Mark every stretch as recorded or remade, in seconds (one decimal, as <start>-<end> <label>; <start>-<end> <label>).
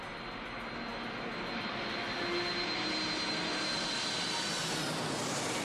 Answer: 0.0-5.6 recorded